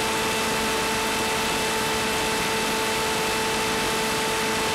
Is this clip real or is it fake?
real